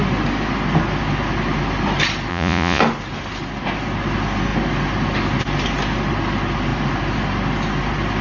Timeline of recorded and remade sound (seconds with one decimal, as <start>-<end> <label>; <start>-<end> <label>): 0.0-2.3 recorded; 2.3-2.8 remade; 2.8-8.2 recorded